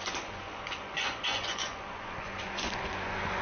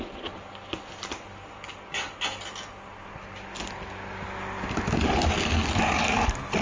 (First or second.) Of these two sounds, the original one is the second